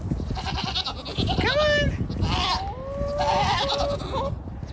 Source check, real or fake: real